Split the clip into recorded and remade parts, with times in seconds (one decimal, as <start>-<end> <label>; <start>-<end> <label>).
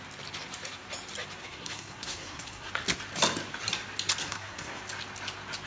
0.0-1.4 recorded; 1.4-2.7 remade; 2.7-4.2 recorded; 4.2-4.8 remade; 4.8-5.7 recorded